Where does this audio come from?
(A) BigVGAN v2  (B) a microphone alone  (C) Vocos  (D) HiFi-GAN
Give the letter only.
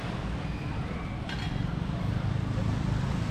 B